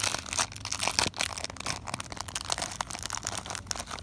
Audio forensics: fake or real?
real